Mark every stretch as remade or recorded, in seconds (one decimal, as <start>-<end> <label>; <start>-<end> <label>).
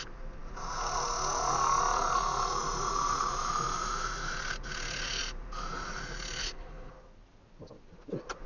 0.0-6.4 recorded; 6.4-6.9 remade; 6.9-8.5 recorded